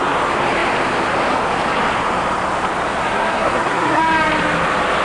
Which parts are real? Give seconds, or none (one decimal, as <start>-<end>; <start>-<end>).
0.0-3.0; 4.0-5.0